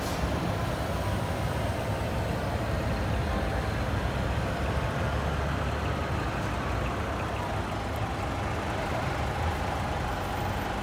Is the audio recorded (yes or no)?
yes